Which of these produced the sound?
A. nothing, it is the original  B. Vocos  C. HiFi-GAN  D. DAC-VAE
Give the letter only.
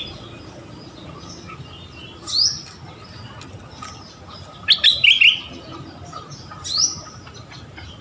A